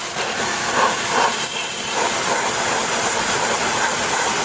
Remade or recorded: remade